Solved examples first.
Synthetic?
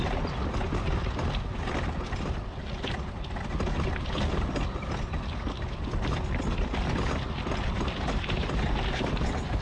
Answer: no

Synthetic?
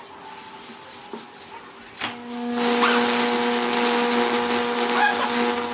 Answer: no